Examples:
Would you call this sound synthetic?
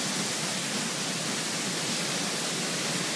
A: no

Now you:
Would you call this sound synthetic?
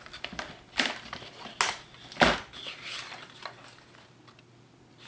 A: no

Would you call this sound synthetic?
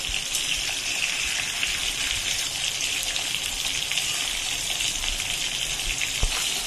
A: no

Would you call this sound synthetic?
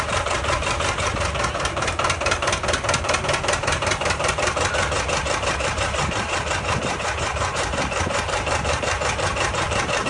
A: yes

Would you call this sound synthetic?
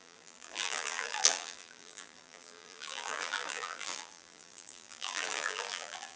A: yes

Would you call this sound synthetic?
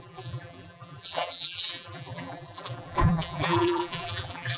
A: yes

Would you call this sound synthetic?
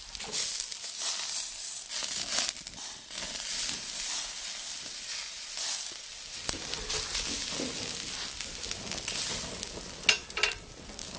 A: no